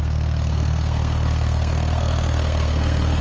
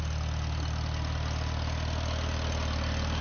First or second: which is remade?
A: first